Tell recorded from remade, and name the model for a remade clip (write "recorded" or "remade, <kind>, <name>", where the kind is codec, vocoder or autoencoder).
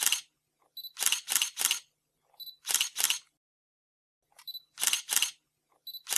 recorded